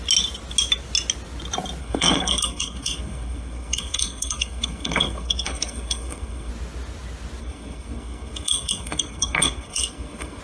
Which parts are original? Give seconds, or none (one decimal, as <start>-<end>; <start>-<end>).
0.0-1.8; 6.5-7.4